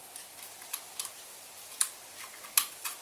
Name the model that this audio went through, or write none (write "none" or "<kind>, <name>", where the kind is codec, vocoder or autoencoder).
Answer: none